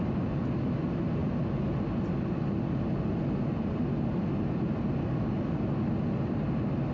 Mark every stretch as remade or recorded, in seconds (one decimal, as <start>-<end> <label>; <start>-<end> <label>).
0.0-6.9 recorded